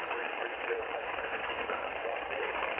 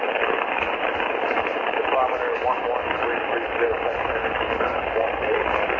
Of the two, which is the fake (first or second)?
first